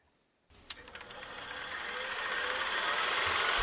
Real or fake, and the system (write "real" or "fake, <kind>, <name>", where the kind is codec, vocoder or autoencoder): real